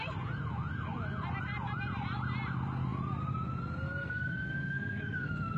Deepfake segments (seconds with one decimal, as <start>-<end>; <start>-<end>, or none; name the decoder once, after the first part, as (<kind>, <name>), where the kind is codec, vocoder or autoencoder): 4.0-5.6 (codec, SNAC)